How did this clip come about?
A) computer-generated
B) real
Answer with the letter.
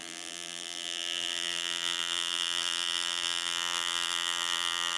A